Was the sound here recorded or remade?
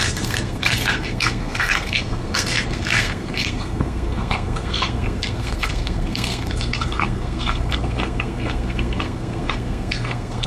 remade